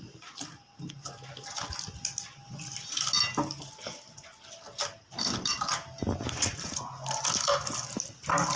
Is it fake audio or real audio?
real